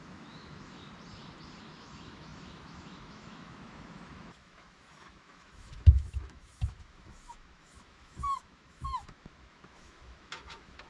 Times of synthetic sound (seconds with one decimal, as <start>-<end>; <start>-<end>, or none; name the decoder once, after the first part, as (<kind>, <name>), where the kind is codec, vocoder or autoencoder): 0.0-0.8 (autoencoder, DAC-VAE); 1.6-10.9